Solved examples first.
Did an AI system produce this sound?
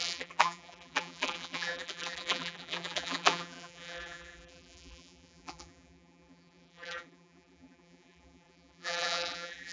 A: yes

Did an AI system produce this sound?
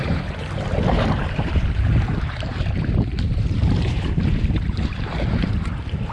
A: yes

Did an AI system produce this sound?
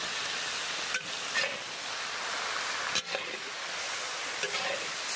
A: no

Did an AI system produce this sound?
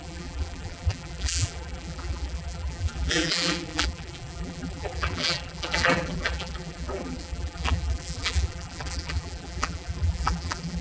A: yes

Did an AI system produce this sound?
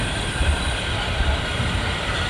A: yes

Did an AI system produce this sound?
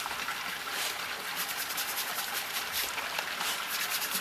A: no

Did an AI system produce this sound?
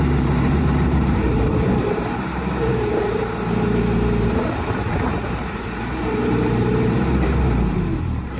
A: yes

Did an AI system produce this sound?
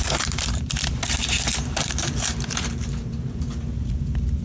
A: yes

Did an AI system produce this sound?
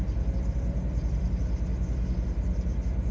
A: no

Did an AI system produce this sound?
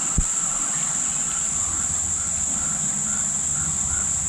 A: yes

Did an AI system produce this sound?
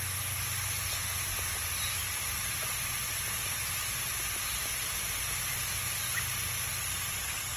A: no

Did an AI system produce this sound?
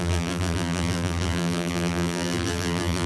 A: yes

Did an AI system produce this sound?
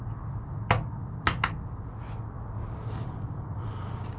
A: no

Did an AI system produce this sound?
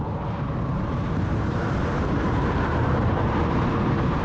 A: yes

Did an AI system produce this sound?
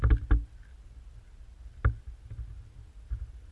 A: no